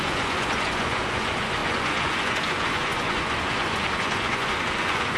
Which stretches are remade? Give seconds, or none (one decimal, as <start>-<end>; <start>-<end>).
0.0-5.2